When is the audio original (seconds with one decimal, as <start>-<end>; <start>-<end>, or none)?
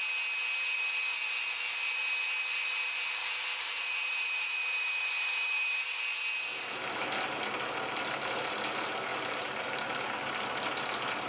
0.0-3.2; 6.0-9.1; 10.3-11.3